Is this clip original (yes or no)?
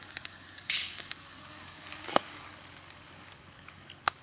no